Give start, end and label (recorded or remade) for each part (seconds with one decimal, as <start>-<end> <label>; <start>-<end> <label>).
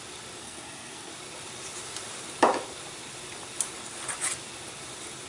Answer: 0.0-0.4 recorded; 0.4-1.1 remade; 1.1-5.3 recorded